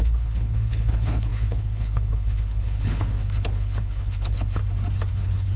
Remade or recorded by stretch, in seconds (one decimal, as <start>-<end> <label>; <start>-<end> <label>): 0.0-4.6 remade; 4.6-5.1 recorded; 5.1-5.6 remade